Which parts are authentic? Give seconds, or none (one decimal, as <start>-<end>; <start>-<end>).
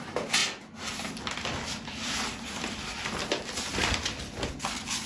0.0-5.1